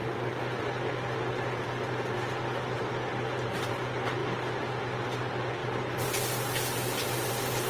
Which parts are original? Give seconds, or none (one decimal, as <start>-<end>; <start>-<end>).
0.0-7.7